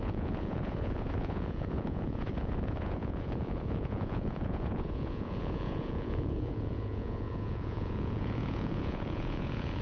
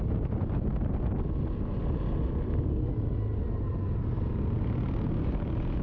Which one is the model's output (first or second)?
first